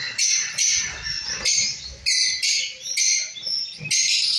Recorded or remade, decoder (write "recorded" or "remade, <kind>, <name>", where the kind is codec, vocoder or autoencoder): recorded